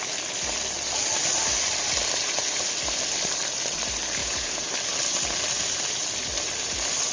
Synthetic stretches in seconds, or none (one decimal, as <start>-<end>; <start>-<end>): 4.2-4.7

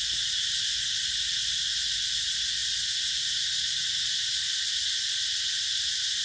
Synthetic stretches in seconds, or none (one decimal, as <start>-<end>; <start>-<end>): none

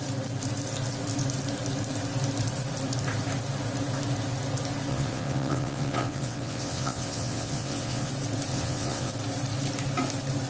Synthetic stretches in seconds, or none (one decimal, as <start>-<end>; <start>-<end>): 4.9-8.1; 8.5-9.1

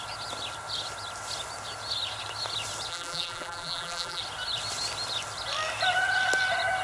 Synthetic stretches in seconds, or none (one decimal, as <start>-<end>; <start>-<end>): 2.9-4.2

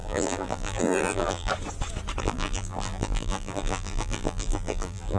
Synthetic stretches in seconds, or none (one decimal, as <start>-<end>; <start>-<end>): 0.0-1.5; 2.2-5.2

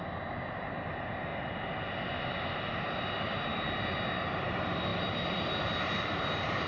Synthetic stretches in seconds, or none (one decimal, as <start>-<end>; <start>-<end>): none

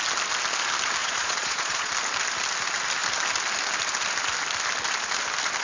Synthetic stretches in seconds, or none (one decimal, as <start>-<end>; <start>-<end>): 1.0-1.9

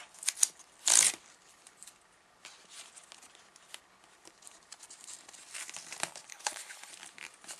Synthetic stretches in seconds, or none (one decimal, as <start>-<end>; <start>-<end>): 6.3-6.9